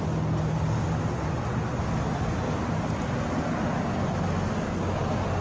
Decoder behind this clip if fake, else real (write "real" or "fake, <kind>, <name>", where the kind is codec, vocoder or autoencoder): real